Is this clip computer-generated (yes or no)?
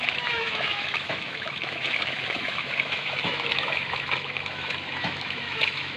yes